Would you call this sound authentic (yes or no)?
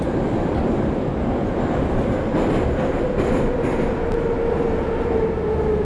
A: yes